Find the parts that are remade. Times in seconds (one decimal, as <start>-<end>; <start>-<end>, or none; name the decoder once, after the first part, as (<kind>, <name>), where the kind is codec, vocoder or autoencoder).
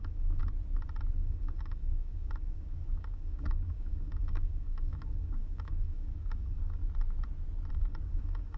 0.0-0.4 (codec, DAC); 1.2-6.8; 7.7-8.6